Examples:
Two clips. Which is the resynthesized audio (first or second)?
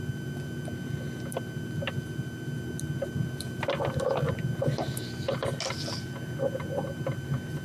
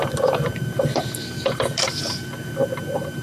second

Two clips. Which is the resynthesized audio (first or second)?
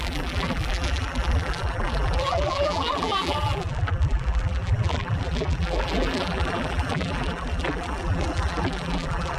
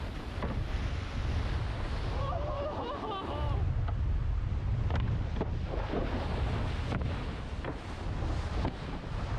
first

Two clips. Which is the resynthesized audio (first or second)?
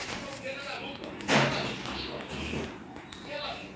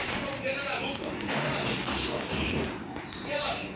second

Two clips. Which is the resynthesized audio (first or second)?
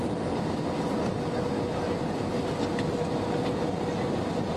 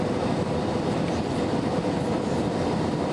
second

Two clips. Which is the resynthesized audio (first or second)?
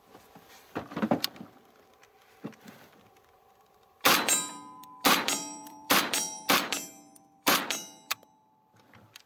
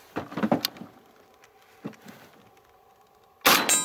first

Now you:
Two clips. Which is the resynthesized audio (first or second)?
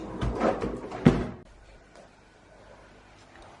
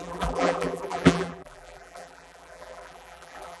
second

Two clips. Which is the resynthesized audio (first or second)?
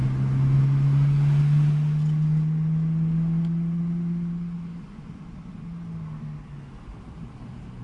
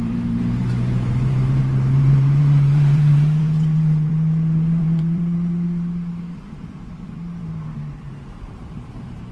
second